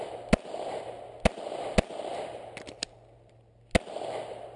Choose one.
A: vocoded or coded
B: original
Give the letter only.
B